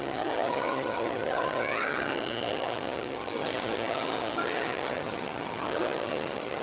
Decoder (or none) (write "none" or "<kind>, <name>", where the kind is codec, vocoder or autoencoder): vocoder, HiFi-GAN